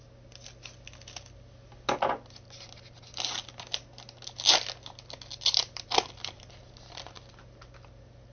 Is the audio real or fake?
real